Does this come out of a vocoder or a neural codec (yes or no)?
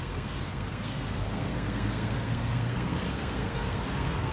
yes